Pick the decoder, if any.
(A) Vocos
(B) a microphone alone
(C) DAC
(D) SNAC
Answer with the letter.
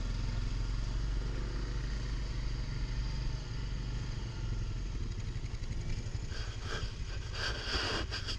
B